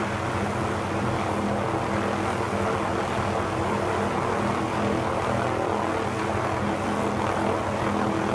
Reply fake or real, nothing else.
real